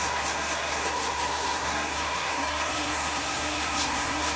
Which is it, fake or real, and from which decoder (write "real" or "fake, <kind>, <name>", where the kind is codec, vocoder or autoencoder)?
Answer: fake, codec, SNAC